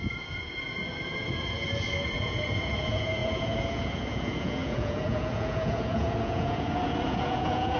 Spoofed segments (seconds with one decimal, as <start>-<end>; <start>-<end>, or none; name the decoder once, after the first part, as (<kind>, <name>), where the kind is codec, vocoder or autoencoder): 0.0-7.8 (vocoder, Vocos)